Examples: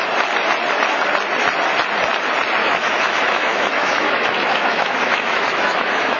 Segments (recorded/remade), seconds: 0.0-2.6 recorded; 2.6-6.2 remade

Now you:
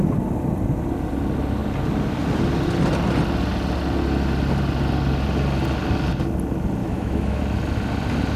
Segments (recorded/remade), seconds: 0.0-6.8 recorded; 6.8-7.4 remade; 7.4-8.4 recorded